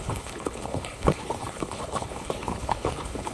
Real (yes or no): no